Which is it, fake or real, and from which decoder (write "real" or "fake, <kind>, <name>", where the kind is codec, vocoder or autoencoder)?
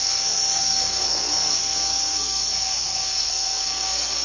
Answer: fake, codec, SNAC